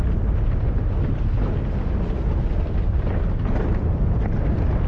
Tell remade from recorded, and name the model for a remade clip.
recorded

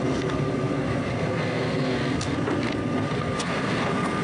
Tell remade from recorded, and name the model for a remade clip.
remade, codec, SNAC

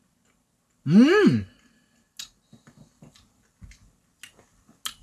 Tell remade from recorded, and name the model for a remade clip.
recorded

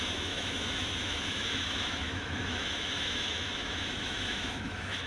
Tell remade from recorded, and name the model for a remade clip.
remade, autoencoder, DAC-VAE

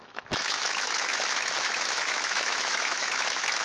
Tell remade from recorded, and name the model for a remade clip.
remade, autoencoder, DAC-VAE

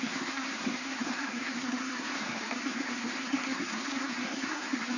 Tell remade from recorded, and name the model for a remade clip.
remade, codec, SNAC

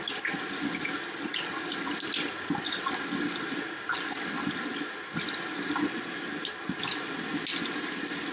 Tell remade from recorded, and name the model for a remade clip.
recorded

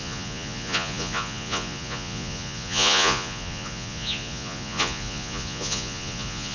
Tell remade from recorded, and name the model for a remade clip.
remade, vocoder, Vocos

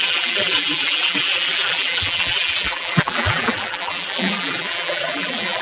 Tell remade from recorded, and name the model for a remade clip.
remade, vocoder, BigVGAN v2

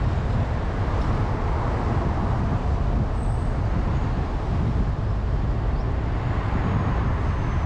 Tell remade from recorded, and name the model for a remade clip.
recorded